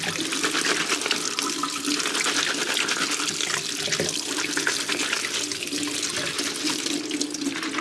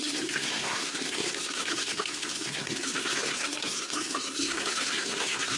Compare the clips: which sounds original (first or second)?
first